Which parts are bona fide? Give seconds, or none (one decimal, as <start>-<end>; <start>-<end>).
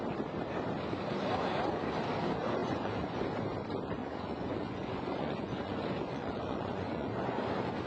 0.0-2.6; 3.2-4.0; 7.4-7.9